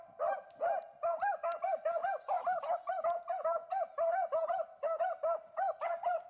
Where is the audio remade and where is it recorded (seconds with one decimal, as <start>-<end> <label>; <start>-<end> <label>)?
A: 0.0-6.3 recorded